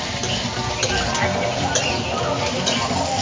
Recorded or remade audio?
remade